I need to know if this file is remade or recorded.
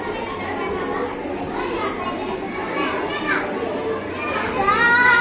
recorded